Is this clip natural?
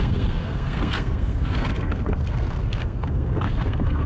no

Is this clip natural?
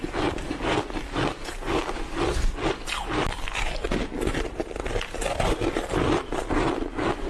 yes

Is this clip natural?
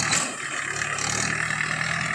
yes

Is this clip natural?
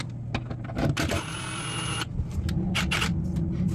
yes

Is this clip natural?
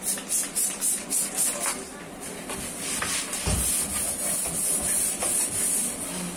yes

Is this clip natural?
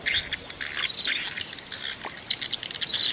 yes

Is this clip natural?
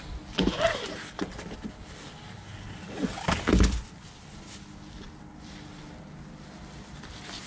yes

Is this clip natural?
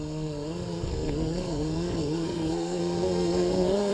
no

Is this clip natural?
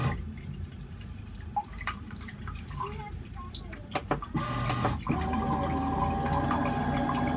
yes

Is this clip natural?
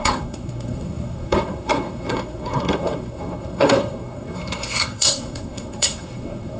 no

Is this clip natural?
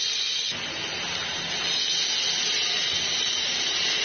yes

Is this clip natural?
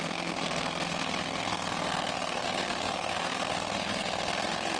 no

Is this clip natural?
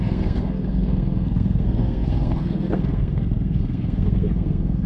no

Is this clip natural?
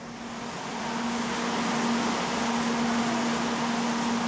yes